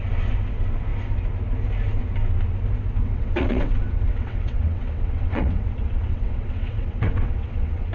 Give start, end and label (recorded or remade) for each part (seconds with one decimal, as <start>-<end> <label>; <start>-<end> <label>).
0.0-3.0 recorded; 3.0-7.9 remade